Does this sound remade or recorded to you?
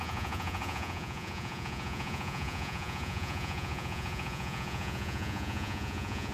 remade